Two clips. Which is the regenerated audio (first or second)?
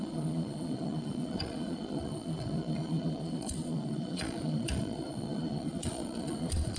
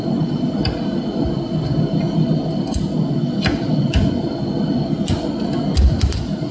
first